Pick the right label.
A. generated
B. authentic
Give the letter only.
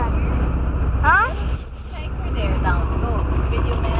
B